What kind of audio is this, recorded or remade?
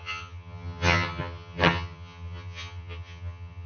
remade